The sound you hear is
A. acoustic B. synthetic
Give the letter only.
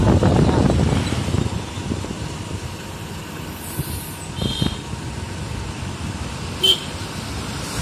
A